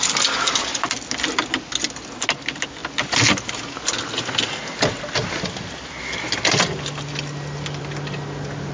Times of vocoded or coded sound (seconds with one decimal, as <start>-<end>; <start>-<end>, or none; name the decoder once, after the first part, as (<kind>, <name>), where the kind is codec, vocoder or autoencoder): none